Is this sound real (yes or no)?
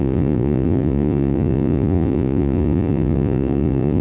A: no